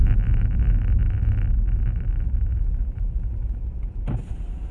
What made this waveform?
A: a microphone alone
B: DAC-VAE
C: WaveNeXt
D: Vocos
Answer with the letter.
A